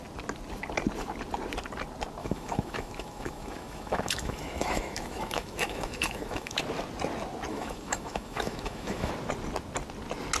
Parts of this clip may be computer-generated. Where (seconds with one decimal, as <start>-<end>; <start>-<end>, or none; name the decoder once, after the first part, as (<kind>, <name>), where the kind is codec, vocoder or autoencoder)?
2.2-6.6 (autoencoder, DAC-VAE); 7.5-9.1